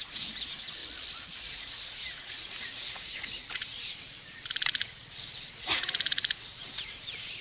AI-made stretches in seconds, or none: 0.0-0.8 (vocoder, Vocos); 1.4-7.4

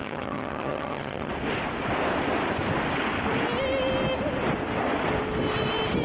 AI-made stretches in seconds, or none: 0.0-1.3 (vocoder, HiFi-GAN)

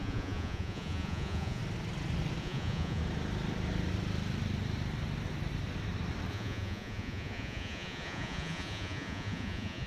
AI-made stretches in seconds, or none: 0.0-1.6 (vocoder, Vocos); 2.4-3.0; 6.3-9.9

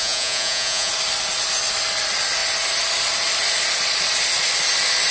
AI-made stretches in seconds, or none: 0.0-0.9 (vocoder, Vocos)

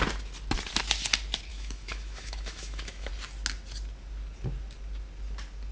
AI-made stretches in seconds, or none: 1.5-3.1 (autoencoder, DAC-VAE)

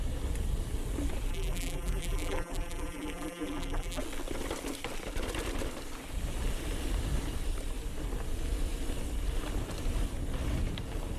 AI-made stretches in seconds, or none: 1.3-4.0 (vocoder, BigVGAN v2)

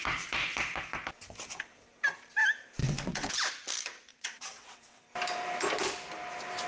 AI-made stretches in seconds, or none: 2.8-3.3 (vocoder, WaveNeXt); 4.1-5.0